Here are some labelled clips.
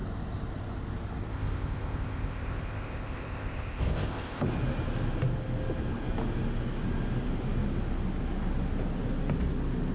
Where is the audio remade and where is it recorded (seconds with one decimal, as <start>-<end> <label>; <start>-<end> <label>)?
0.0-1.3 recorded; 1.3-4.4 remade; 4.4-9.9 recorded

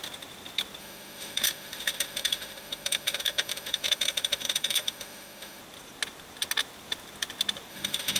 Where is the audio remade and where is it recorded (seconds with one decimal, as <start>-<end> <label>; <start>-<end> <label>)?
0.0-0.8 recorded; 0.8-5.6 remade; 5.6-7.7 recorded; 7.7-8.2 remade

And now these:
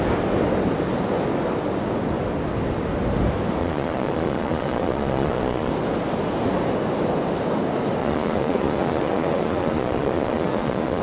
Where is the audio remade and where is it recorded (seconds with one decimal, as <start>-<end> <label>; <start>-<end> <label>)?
0.0-3.6 recorded; 3.6-5.7 remade; 5.7-8.0 recorded; 8.0-11.0 remade